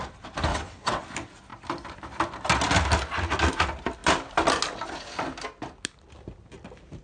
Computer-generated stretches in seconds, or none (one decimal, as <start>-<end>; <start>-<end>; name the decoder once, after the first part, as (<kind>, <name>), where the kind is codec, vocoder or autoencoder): 0.5-1.0 (vocoder, WaveNeXt)